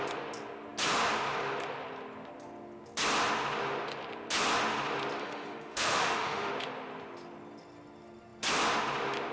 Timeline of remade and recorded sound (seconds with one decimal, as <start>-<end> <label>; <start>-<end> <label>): 0.0-5.2 recorded; 5.2-6.5 remade; 6.5-9.3 recorded